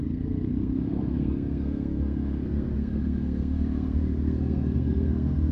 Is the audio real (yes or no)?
no